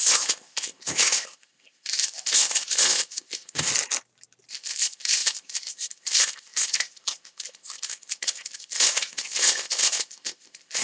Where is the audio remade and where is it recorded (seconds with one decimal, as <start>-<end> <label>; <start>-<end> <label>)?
0.0-3.7 remade; 3.7-4.5 recorded; 4.5-10.8 remade